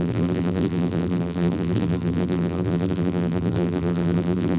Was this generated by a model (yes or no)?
yes